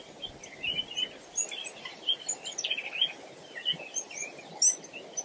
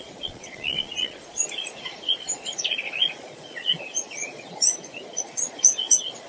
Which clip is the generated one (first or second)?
second